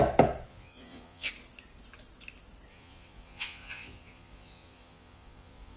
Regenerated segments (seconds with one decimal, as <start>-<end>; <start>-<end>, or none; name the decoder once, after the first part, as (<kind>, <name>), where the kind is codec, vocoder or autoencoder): 0.5-1.3 (vocoder, Vocos); 2.7-5.8